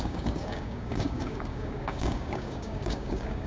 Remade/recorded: remade